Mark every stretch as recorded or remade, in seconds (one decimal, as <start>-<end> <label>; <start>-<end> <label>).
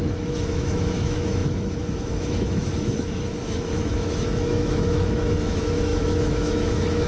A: 0.0-7.1 remade